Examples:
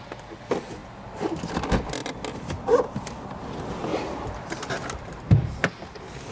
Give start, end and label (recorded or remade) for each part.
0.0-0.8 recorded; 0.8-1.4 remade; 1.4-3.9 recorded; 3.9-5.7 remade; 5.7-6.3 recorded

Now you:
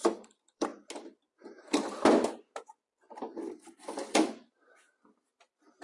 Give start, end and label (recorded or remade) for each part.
0.0-0.7 remade; 0.7-3.8 recorded; 3.8-5.8 remade

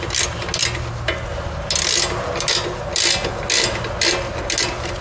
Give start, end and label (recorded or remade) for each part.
0.0-5.0 recorded

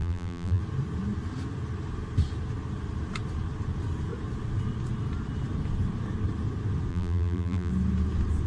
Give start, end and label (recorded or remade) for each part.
0.0-0.6 remade; 0.6-6.9 recorded; 6.9-7.7 remade; 7.7-8.5 recorded

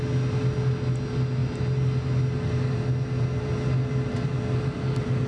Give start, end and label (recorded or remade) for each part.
0.0-5.3 recorded

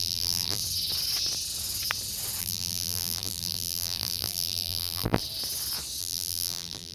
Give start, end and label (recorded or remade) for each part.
0.0-0.6 remade; 0.6-2.4 recorded; 2.4-5.2 remade; 5.2-6.0 recorded; 6.0-6.9 remade

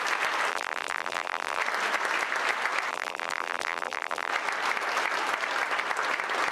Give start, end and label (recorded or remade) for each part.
0.0-0.5 recorded; 0.5-1.6 remade; 1.6-2.9 recorded; 2.9-4.3 remade; 4.3-6.5 recorded